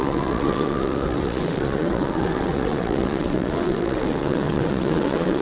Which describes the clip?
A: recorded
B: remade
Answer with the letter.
B